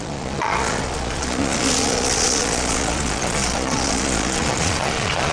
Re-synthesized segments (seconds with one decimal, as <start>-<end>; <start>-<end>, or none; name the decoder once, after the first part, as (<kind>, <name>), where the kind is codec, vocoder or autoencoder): 0.0-5.3 (vocoder, Vocos)